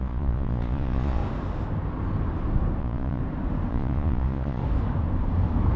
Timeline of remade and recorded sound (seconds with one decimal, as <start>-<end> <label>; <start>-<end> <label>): 0.0-1.2 remade; 1.2-2.8 recorded; 2.8-3.2 remade; 3.2-3.7 recorded; 3.7-4.6 remade; 4.6-5.8 recorded